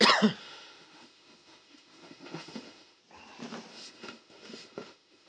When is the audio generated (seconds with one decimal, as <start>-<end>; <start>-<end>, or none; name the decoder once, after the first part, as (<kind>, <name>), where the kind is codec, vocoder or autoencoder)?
0.4-3.0 (autoencoder, DAC-VAE); 3.7-5.3